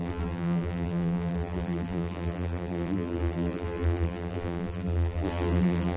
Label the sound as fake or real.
fake